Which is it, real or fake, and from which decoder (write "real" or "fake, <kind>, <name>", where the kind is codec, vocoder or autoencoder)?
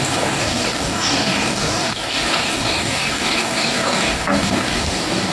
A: fake, codec, DAC